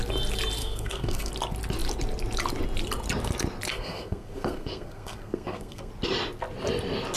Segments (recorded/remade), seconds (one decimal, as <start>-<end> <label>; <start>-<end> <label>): 0.0-0.6 recorded; 0.6-1.3 remade; 1.3-3.7 recorded; 3.7-5.9 remade; 5.9-7.2 recorded